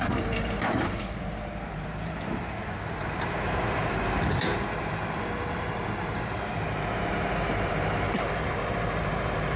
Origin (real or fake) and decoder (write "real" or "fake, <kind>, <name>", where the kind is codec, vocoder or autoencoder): fake, vocoder, BigVGAN v2